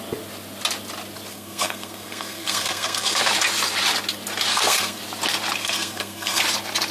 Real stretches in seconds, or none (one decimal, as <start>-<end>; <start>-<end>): 0.0-1.3; 3.2-4.5; 5.0-5.6; 6.4-6.9